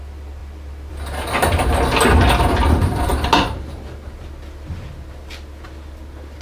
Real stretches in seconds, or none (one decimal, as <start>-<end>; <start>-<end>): 0.0-6.4